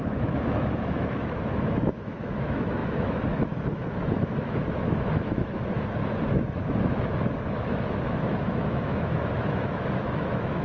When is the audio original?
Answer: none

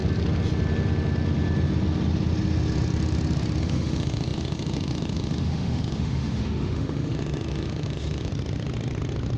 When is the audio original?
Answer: 0.0-3.6; 8.3-9.4

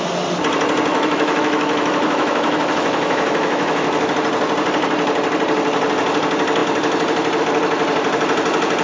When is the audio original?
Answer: 0.0-0.9; 4.1-8.8

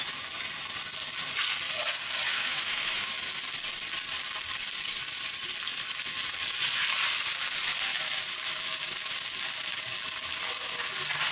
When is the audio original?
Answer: 0.0-2.3; 3.1-11.3